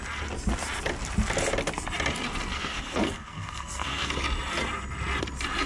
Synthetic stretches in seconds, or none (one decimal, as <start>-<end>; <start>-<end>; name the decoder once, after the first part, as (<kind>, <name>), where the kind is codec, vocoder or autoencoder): 2.5-4.1 (codec, SNAC)